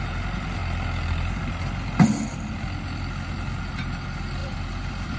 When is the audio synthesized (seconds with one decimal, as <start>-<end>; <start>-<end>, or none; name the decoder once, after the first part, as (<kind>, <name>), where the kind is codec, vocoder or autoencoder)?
0.0-0.6 (vocoder, BigVGAN v2); 3.7-5.2